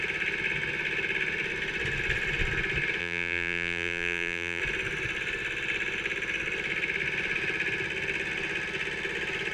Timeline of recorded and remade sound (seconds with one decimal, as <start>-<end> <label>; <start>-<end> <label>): 0.0-3.0 recorded; 3.0-4.6 remade; 4.6-9.5 recorded